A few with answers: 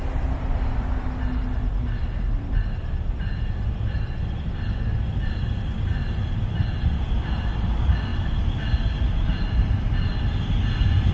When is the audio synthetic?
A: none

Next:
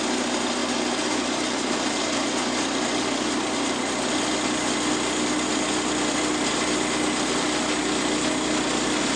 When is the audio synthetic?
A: none

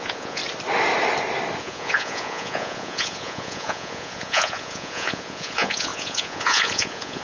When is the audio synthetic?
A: 0.0-0.4 (vocoder, Vocos); 1.6-7.2